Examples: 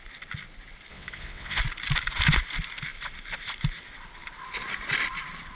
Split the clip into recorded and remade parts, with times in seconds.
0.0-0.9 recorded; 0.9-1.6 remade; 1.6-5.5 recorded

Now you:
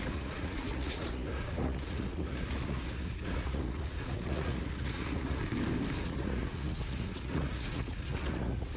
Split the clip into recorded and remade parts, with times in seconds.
0.0-5.4 remade; 5.4-6.0 recorded; 6.0-8.8 remade